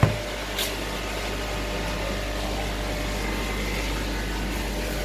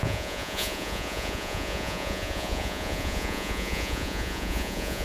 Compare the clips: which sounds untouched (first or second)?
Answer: first